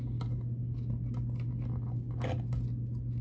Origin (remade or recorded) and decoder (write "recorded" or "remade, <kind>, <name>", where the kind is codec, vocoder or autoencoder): recorded